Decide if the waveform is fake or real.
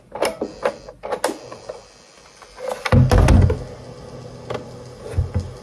real